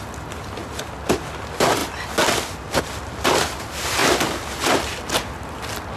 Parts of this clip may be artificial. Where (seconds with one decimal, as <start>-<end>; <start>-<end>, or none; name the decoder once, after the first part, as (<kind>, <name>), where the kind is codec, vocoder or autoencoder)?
none